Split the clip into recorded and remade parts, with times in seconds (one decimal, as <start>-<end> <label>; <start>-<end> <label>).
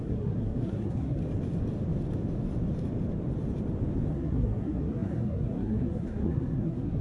0.0-1.2 remade; 1.2-4.1 recorded; 4.1-7.0 remade